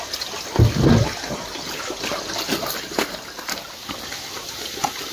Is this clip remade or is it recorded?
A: recorded